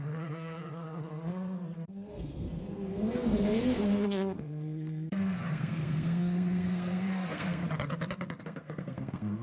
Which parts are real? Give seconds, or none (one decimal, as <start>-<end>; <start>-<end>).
7.6-8.4